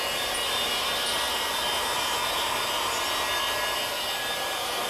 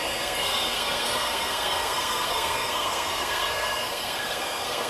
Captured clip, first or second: first